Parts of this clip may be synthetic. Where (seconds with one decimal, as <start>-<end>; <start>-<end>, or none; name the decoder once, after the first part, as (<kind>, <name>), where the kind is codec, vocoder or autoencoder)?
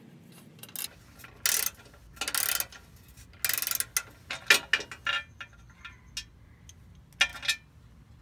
none